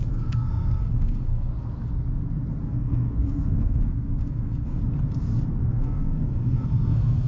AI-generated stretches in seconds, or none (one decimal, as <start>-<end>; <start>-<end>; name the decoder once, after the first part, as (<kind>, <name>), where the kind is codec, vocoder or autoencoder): 0.0-1.5 (codec, SNAC); 2.6-4.8; 5.7-7.3